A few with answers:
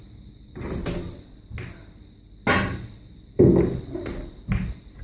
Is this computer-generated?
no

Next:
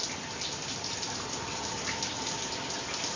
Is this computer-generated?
no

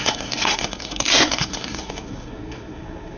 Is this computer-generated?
yes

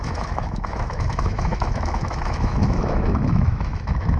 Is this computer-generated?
yes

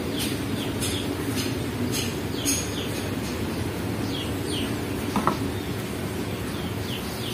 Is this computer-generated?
no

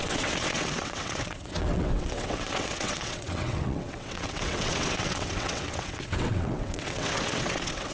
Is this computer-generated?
yes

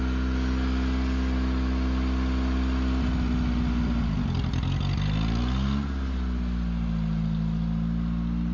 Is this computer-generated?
no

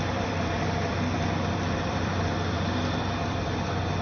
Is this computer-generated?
yes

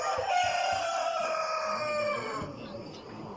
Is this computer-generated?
no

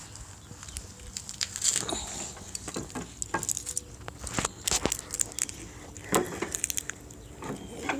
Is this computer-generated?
no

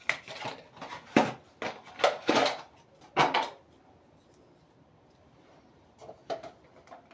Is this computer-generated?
no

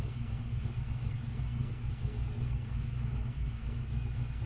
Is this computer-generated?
yes